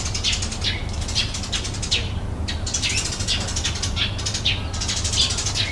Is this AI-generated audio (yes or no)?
no